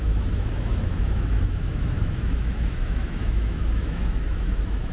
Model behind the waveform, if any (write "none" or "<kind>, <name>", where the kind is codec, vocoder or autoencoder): autoencoder, DAC-VAE